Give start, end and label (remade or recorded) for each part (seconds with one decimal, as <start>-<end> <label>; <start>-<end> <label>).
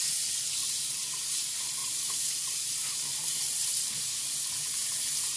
0.0-1.8 recorded; 1.8-3.9 remade; 3.9-5.4 recorded